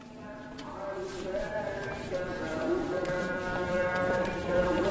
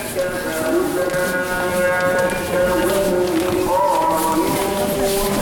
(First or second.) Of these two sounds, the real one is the second